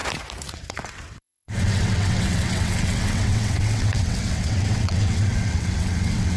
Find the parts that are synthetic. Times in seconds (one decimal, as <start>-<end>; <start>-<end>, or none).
0.5-6.4